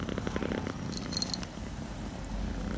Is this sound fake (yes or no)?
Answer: no